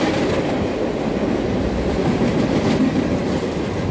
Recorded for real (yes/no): yes